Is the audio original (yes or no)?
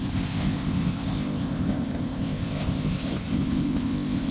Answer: no